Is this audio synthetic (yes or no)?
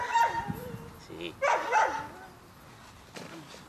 no